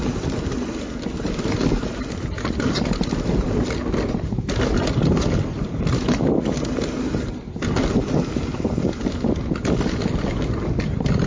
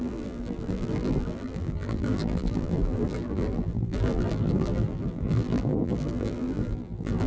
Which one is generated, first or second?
second